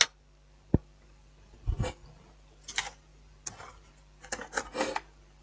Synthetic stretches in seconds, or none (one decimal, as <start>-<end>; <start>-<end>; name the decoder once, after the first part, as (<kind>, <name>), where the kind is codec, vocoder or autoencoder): none